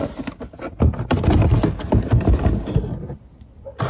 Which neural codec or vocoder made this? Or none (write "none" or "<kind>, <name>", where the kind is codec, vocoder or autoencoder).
none